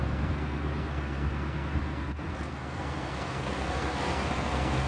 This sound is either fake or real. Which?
fake